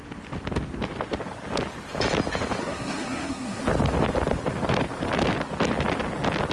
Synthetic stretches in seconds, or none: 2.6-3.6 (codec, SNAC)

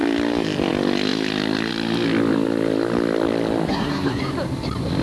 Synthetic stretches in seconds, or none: 3.7-4.2 (codec, SNAC)

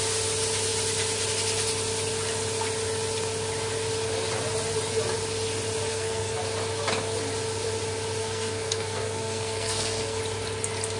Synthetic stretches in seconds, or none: 5.9-6.4 (codec, SNAC); 8.2-10.2

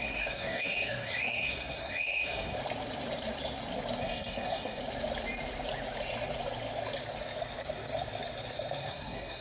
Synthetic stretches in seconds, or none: 0.0-2.6 (codec, SNAC); 4.0-4.8; 8.8-9.4

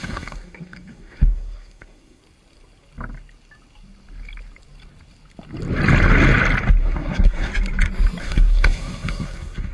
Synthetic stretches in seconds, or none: 0.0-2.2 (codec, SNAC); 6.8-7.5; 8.2-9.7